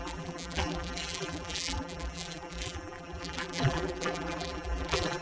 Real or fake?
fake